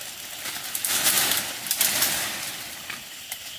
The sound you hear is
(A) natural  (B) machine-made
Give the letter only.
A